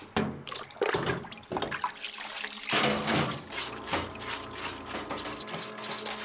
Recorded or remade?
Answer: recorded